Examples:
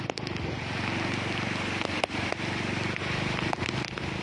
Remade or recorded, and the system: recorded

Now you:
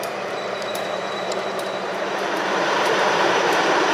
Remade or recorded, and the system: remade, vocoder, BigVGAN v2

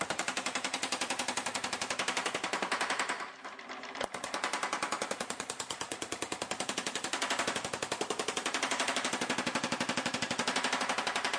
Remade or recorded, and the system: remade, vocoder, BigVGAN v2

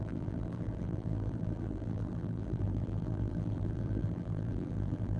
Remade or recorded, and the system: remade, vocoder, BigVGAN v2